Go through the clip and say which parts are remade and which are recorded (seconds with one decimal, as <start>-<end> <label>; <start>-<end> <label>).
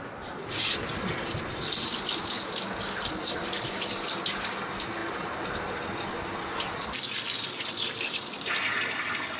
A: 0.0-9.4 recorded